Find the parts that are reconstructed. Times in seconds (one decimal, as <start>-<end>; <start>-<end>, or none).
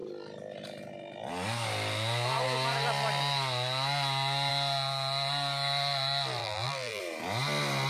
6.4-7.0